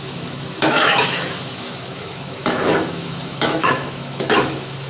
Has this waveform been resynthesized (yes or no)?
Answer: yes